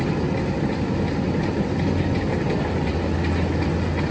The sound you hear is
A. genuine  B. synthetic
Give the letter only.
A